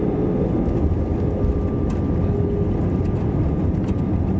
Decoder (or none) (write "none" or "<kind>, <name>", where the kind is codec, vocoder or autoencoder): none